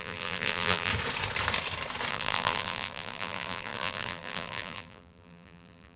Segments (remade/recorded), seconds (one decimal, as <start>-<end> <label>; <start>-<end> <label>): 0.0-0.9 remade; 0.9-2.1 recorded; 2.1-6.0 remade